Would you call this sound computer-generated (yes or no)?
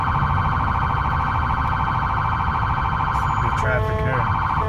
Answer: no